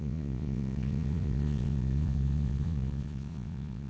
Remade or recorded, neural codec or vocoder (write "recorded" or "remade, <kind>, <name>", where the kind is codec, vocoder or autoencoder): remade, vocoder, Vocos